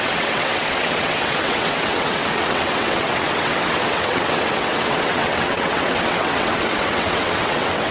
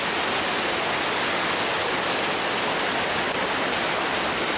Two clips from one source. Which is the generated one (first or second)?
first